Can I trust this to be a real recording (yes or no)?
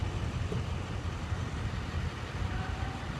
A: yes